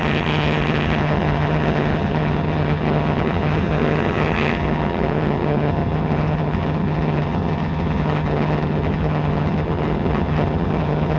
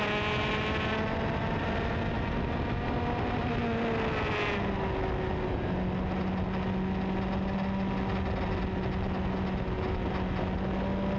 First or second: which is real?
second